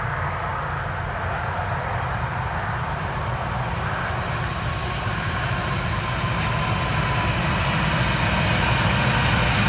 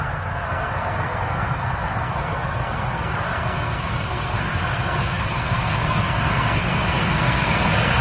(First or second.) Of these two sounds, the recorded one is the first